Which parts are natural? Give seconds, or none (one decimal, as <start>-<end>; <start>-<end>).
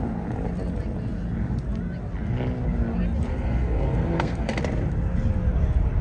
0.0-3.3; 4.6-6.0